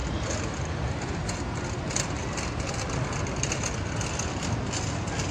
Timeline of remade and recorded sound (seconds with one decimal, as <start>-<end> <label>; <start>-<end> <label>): 0.0-0.9 remade; 0.9-5.3 recorded